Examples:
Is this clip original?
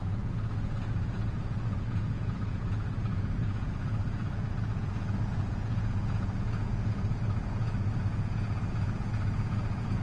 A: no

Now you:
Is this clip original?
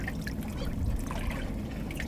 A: yes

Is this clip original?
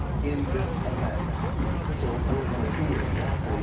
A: yes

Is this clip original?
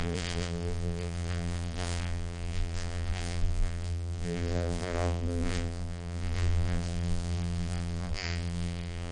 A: no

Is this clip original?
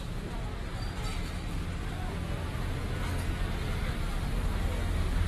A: yes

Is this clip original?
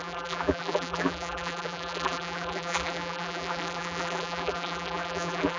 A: no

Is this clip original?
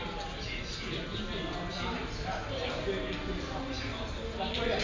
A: yes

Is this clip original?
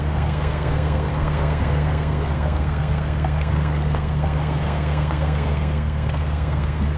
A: no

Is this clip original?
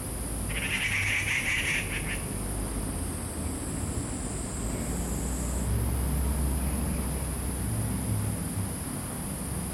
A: yes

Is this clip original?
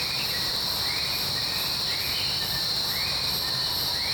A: yes